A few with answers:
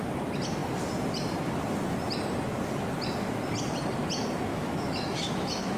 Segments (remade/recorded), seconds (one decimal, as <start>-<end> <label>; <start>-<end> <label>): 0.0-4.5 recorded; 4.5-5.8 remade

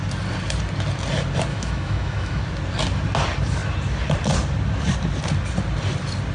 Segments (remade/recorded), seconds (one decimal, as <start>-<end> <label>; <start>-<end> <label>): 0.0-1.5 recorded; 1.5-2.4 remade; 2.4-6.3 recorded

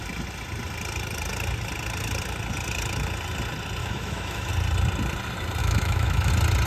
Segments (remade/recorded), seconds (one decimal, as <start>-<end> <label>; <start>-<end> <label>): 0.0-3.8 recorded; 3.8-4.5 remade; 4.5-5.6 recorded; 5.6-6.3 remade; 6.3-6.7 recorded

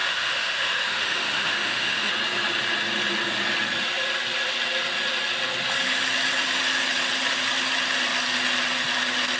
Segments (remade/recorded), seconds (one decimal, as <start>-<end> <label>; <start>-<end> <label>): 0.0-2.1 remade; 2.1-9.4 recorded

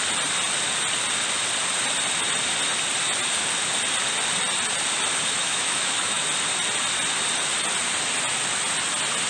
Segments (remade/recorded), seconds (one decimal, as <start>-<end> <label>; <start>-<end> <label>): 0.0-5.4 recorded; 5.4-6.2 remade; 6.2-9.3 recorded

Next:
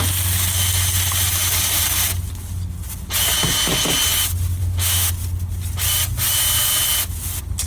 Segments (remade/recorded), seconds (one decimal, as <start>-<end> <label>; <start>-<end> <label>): 0.0-4.6 recorded; 4.6-5.1 remade; 5.1-7.7 recorded

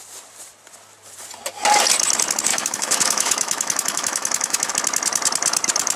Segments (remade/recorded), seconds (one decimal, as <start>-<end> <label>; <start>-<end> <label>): 0.0-2.5 recorded; 2.5-4.7 remade; 4.7-6.0 recorded